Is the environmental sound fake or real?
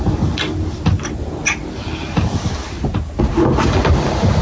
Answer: real